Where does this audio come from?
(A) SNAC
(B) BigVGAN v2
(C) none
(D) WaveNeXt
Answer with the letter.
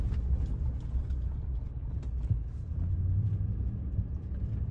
C